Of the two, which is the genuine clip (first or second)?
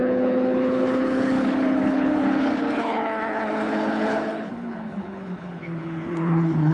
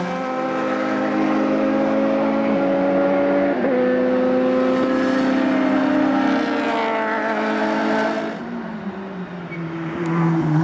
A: second